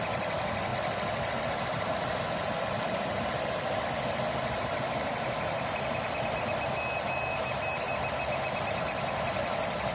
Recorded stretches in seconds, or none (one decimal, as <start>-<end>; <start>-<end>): 0.0-9.9